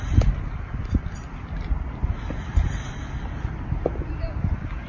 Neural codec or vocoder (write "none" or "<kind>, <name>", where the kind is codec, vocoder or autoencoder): none